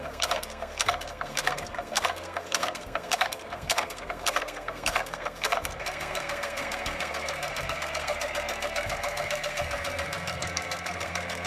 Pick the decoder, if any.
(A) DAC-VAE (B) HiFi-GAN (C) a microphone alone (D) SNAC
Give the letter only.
D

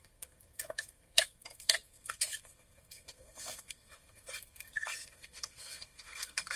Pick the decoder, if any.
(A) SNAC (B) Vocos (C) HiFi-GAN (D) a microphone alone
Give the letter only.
A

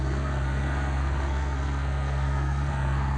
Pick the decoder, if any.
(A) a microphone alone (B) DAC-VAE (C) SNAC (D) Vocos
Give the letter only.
C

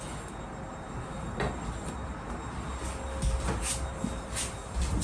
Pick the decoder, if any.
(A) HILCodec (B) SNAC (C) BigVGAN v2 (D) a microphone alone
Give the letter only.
D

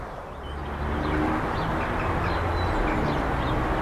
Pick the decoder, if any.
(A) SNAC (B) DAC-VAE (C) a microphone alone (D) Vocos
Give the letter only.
C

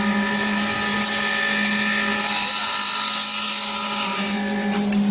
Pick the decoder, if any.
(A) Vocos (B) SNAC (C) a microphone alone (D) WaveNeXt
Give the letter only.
C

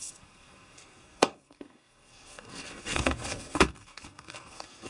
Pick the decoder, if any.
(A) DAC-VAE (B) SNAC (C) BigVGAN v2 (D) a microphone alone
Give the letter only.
B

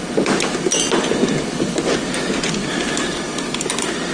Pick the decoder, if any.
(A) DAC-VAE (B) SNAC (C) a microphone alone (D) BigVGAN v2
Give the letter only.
C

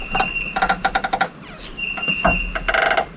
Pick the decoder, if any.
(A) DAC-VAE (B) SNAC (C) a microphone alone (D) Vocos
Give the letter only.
C